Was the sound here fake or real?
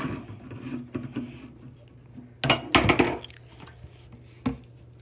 real